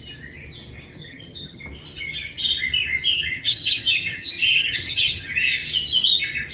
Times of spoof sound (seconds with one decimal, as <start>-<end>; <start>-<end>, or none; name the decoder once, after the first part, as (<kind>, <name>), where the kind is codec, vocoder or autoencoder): 1.0-1.6 (vocoder, HiFi-GAN); 3.1-5.3